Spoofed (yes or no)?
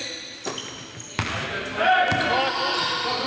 no